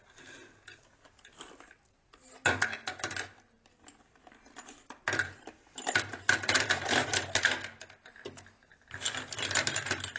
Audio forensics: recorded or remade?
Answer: recorded